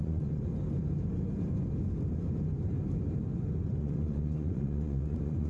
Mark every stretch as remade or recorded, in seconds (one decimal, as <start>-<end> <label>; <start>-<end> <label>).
0.0-0.5 remade; 0.5-3.8 recorded; 3.8-5.5 remade